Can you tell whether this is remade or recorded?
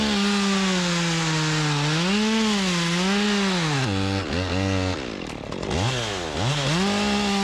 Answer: recorded